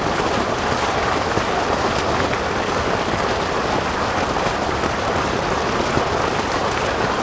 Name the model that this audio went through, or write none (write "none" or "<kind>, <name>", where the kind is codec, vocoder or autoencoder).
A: none